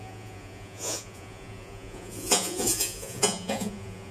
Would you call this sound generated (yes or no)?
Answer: yes